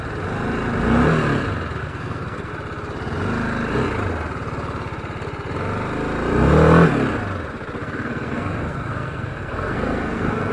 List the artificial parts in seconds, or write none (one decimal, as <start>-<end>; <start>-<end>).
1.8-2.5; 7.8-10.5